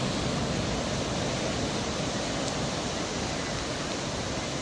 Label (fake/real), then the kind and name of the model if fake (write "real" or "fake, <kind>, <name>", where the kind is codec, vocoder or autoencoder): real